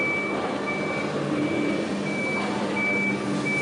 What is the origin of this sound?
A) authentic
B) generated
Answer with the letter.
A